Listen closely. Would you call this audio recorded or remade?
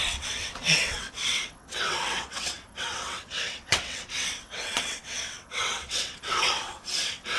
remade